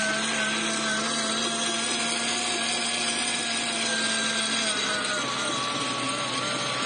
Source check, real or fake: real